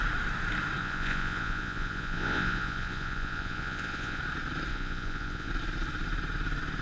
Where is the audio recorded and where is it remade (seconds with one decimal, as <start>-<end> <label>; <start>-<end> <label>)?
0.0-0.8 recorded; 0.8-4.2 remade; 4.2-4.7 recorded; 4.7-5.5 remade; 5.5-6.8 recorded